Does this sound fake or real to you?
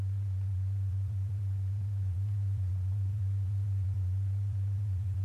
fake